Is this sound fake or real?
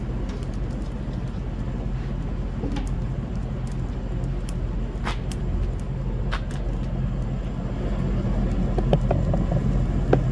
real